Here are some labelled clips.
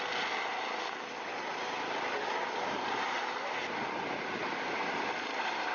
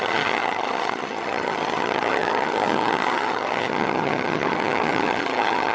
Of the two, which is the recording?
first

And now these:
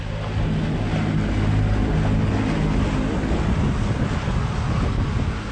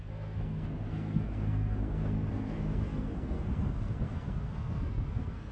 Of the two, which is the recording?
first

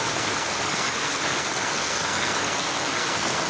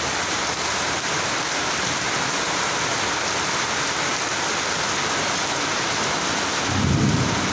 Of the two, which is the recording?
second